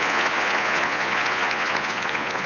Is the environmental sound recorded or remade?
remade